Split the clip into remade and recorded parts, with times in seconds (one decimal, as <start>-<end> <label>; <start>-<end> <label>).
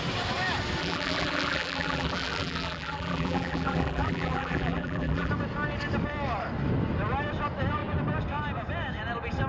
0.0-0.8 recorded; 0.8-5.3 remade; 5.3-9.5 recorded